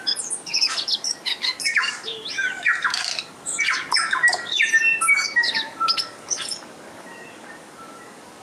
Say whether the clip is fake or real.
fake